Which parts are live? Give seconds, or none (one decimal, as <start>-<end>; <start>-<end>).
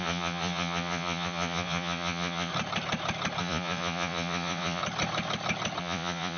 2.5-3.4; 4.8-5.8